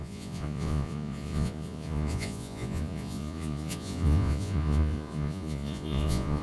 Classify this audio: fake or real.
fake